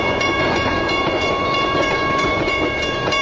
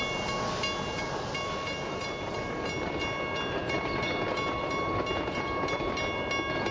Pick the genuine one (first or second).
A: second